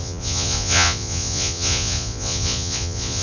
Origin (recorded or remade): remade